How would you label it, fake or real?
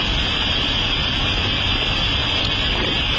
real